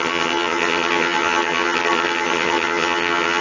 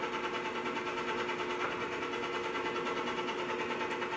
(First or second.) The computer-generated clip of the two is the first